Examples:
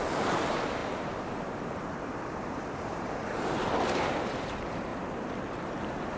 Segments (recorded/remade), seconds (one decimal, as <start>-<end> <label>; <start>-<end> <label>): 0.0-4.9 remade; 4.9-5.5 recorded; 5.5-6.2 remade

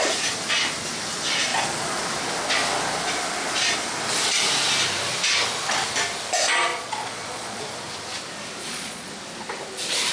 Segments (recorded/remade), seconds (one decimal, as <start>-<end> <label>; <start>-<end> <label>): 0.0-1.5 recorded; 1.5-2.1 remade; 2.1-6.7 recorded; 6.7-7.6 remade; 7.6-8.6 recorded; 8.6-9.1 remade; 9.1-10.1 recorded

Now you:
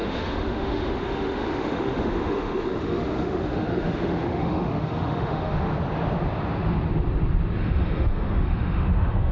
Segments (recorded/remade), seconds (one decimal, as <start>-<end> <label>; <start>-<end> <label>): 0.0-5.7 remade; 5.7-7.6 recorded; 7.6-9.3 remade